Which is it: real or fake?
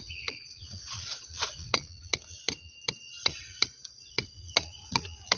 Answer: fake